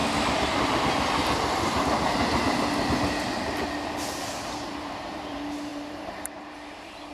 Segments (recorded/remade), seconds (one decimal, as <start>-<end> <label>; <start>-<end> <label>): 0.0-4.3 recorded; 4.3-7.1 remade